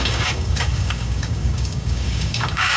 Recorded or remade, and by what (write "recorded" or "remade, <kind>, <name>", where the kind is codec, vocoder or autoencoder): remade, codec, DAC